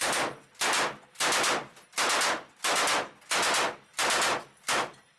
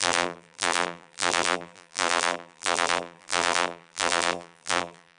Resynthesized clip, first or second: second